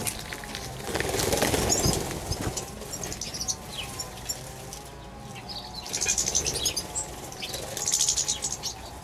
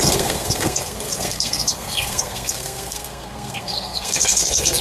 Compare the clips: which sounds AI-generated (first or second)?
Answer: second